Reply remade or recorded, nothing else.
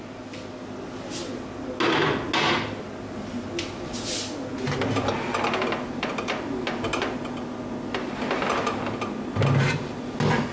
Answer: recorded